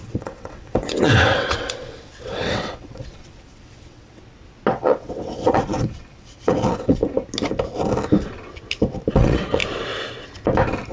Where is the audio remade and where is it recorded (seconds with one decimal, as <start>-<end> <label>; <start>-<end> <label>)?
0.0-4.2 remade; 4.2-4.7 recorded; 4.7-7.0 remade; 7.0-9.1 recorded; 9.1-9.6 remade; 9.6-10.9 recorded